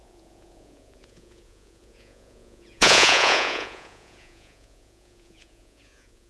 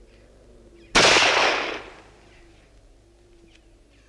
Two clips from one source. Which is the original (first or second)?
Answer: second